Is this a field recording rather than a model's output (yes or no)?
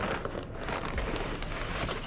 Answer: yes